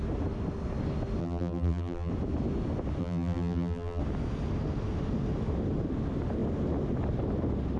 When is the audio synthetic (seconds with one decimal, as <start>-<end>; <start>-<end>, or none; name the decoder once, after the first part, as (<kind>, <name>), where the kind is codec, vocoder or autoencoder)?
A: 1.2-2.1 (vocoder, BigVGAN v2); 3.0-4.0